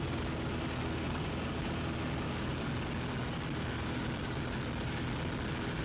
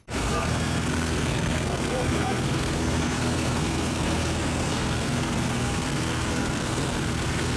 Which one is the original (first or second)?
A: first